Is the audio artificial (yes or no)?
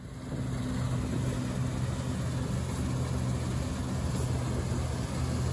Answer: no